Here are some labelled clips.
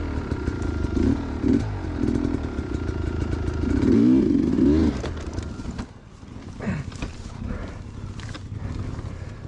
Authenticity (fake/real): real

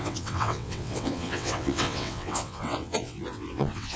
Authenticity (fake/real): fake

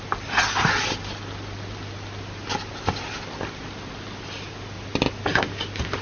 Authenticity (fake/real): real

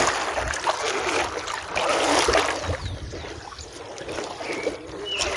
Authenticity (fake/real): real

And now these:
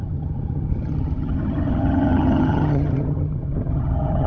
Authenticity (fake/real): fake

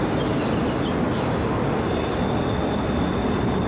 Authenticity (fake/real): real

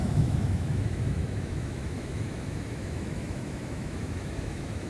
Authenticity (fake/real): fake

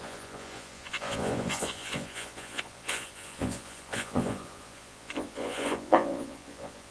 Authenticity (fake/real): fake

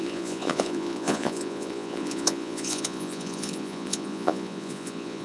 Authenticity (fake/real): fake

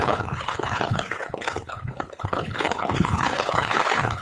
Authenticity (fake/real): fake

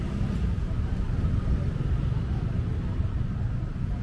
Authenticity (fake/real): real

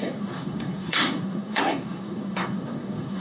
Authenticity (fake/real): fake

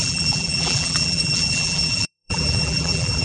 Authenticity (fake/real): fake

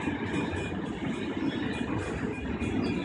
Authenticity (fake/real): real